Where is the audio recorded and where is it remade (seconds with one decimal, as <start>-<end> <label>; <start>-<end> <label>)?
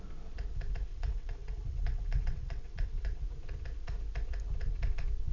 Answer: 0.0-0.9 recorded; 0.9-3.2 remade; 3.2-5.3 recorded